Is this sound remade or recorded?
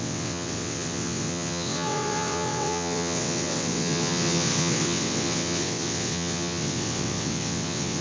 remade